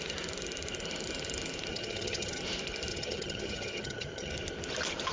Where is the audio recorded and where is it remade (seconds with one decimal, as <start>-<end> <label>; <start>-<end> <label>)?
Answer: 0.0-1.7 recorded; 1.7-2.4 remade; 2.4-2.9 recorded; 2.9-4.3 remade; 4.3-5.1 recorded